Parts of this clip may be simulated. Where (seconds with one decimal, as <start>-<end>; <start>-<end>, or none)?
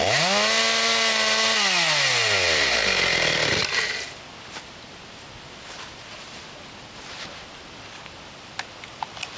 none